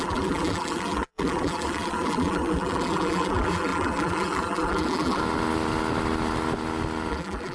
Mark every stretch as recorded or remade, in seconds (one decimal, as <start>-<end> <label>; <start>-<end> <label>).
0.0-5.2 remade; 5.2-7.1 recorded; 7.1-7.5 remade